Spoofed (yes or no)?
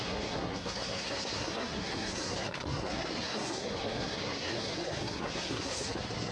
yes